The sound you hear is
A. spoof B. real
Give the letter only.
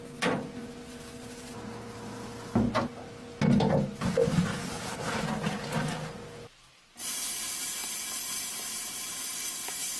B